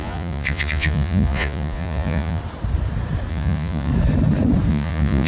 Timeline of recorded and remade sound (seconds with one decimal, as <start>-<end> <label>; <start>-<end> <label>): 0.0-2.4 remade; 2.4-3.3 recorded; 3.3-3.9 remade; 3.9-4.7 recorded; 4.7-5.3 remade